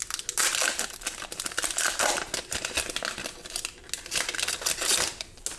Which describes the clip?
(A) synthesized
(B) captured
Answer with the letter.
B